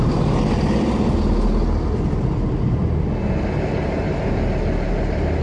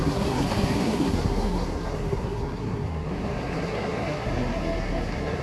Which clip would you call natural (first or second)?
first